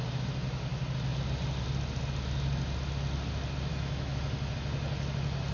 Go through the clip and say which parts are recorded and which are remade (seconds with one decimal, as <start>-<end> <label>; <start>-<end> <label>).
0.0-3.7 recorded; 3.7-4.2 remade; 4.2-5.5 recorded